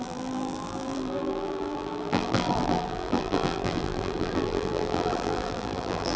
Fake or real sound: fake